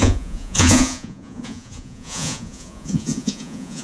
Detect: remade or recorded remade